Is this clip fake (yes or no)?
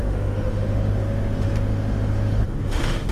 yes